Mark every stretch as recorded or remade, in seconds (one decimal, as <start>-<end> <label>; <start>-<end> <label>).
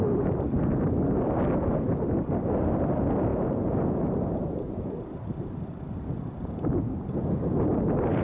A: 0.0-3.3 recorded; 3.3-7.1 remade; 7.1-8.2 recorded